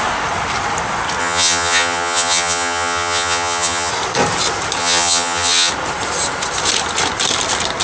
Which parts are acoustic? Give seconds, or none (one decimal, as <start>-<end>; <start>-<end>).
0.0-1.2; 3.9-4.8; 5.7-7.8